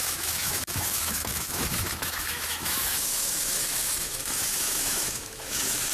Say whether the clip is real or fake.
fake